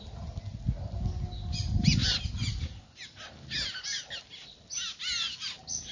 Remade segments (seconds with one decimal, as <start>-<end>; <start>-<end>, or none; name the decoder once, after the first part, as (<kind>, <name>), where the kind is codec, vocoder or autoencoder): none